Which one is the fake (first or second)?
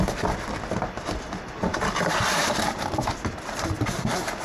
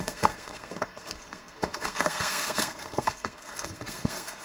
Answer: second